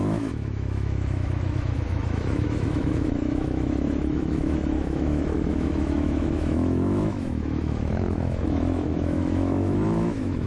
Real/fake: fake